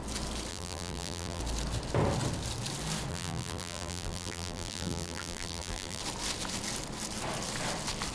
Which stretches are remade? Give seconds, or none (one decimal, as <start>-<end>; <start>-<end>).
0.5-1.4; 3.1-6.0